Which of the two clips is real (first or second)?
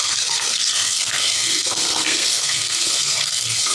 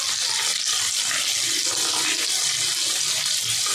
second